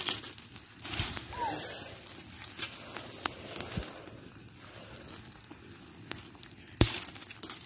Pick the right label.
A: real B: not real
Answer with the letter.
A